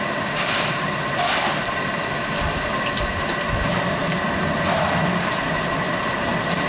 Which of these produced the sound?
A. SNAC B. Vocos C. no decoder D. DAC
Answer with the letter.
C